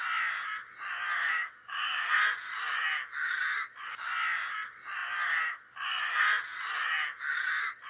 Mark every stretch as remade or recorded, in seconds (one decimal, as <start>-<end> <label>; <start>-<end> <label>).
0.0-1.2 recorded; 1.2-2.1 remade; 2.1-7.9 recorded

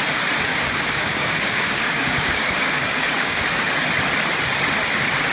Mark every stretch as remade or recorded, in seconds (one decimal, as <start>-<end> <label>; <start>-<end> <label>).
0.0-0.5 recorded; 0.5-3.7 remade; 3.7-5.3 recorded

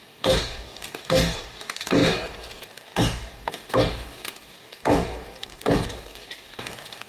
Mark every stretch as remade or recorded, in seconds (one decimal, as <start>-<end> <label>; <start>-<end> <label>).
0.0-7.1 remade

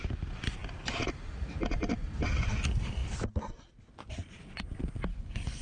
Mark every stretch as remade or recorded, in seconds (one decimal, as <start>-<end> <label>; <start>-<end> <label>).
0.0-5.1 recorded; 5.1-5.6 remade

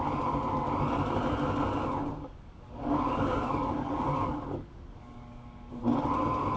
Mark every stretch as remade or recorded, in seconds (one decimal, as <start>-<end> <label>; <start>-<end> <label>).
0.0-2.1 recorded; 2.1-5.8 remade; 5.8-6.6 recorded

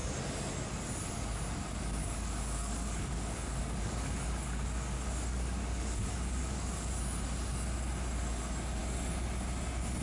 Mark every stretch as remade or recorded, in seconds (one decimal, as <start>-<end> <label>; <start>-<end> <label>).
0.0-2.0 recorded; 2.0-6.9 remade; 6.9-10.0 recorded